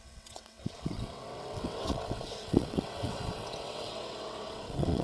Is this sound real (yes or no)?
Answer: no